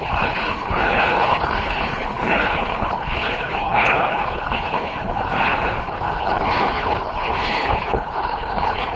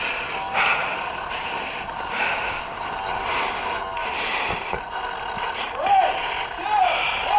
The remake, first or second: first